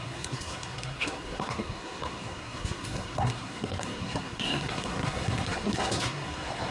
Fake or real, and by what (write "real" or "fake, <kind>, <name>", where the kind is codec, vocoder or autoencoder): fake, codec, SNAC